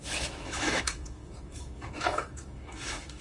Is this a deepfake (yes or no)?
yes